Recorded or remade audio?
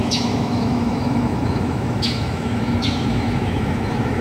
remade